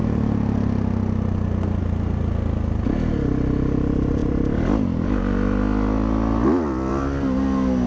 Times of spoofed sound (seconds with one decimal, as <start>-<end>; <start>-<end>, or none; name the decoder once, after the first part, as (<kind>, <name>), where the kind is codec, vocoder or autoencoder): none